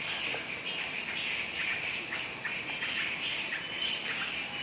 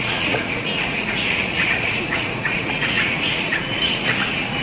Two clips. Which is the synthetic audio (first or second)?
second